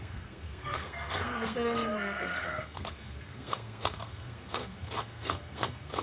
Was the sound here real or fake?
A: fake